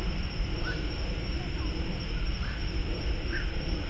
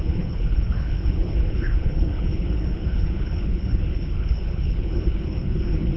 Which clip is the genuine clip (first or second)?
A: first